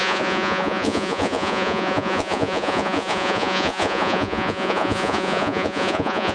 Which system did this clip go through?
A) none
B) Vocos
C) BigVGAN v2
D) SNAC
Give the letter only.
B